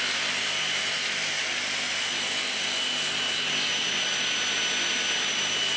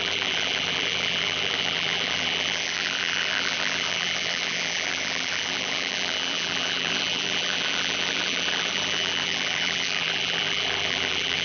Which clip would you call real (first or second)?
first